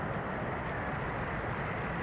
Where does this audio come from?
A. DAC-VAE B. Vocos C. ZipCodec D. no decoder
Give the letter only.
D